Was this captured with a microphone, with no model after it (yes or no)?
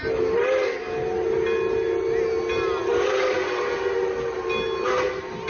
yes